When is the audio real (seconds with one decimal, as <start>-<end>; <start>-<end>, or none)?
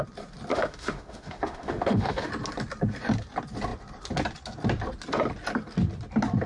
0.0-0.5; 2.3-6.5